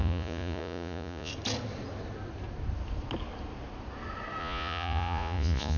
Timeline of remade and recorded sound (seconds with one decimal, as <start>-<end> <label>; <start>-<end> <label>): 0.0-1.3 remade; 1.3-4.4 recorded; 4.4-5.8 remade